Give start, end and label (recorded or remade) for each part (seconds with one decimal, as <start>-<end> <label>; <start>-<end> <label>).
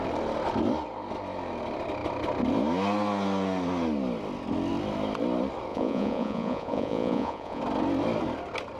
0.0-5.7 recorded; 5.7-7.6 remade; 7.6-8.8 recorded